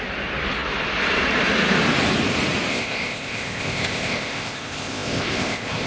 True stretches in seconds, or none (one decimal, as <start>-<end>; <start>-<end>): 0.0-2.7